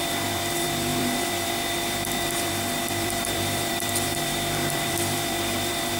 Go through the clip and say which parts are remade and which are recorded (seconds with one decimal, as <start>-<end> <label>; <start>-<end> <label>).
0.0-6.0 remade